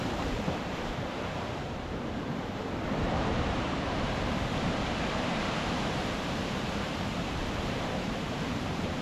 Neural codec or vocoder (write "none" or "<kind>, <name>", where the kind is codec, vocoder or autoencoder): vocoder, BigVGAN v2